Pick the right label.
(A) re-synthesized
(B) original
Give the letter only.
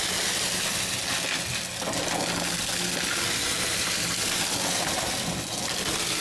B